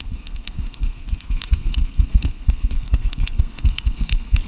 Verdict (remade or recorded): remade